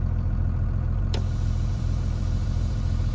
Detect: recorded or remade remade